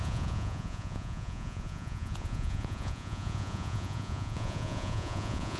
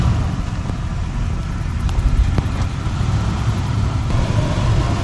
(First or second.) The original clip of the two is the second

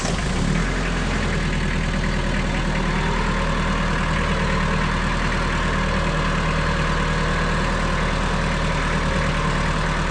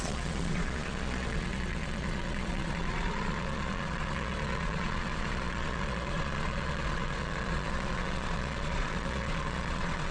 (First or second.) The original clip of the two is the first